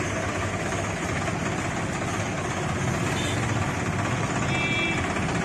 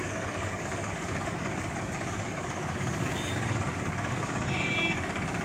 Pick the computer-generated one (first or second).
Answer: second